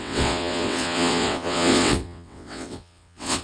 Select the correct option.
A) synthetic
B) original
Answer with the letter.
A